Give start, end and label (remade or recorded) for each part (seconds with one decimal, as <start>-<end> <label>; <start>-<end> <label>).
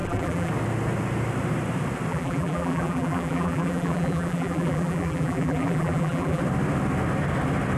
0.0-0.5 remade; 0.5-2.1 recorded; 2.1-6.4 remade; 6.4-7.8 recorded